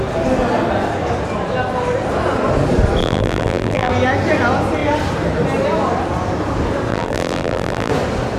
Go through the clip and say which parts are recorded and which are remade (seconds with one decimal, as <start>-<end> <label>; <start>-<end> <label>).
0.0-3.0 recorded; 3.0-3.9 remade; 3.9-6.9 recorded; 6.9-7.9 remade; 7.9-8.4 recorded